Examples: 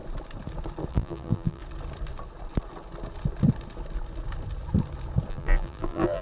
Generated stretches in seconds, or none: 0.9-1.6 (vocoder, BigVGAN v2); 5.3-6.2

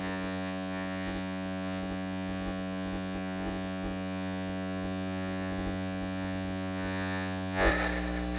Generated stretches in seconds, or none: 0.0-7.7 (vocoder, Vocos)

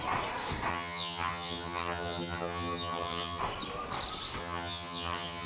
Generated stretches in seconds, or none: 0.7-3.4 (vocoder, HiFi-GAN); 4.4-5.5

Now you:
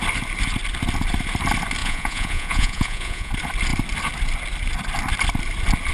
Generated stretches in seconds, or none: 1.8-3.3 (vocoder, Vocos)

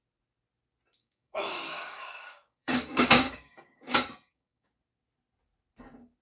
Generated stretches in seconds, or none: 1.0-4.7 (codec, DAC)

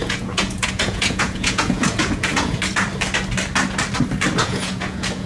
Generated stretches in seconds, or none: 0.0-2.6 (vocoder, Vocos); 4.4-5.3

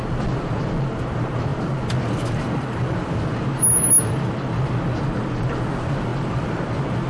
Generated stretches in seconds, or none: 6.1-6.6 (vocoder, BigVGAN v2)